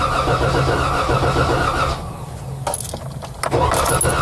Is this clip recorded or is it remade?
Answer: recorded